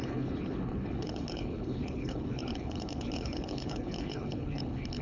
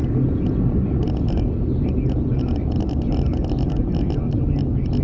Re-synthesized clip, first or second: first